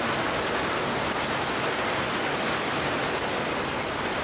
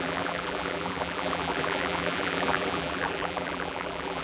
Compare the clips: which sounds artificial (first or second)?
second